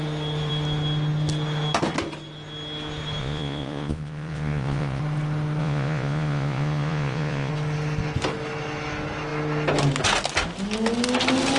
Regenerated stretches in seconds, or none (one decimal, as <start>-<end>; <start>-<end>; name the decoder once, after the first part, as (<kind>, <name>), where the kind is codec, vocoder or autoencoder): 3.2-5.0 (vocoder, Vocos); 5.6-7.5